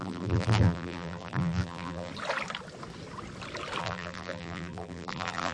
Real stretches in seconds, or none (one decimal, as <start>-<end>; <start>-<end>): 2.1-3.8